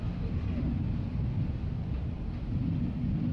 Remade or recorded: recorded